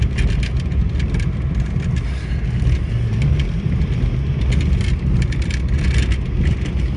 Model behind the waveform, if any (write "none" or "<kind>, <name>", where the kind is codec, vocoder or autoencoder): none